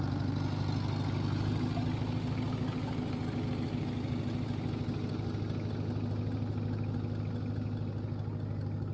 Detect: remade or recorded recorded